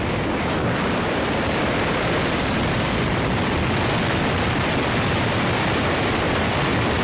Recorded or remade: remade